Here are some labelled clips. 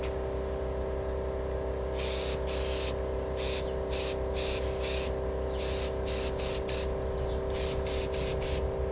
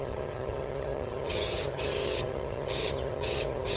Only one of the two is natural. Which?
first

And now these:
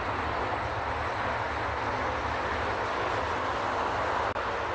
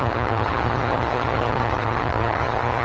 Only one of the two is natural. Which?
first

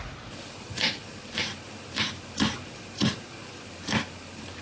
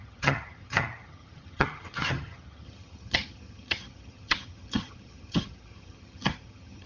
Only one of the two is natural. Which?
first